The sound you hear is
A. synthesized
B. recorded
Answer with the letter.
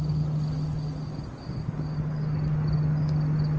B